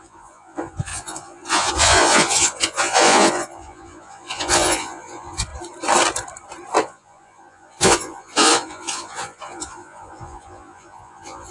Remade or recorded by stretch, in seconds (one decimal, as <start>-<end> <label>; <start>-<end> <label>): 0.0-5.5 remade; 5.5-6.8 recorded; 6.8-11.5 remade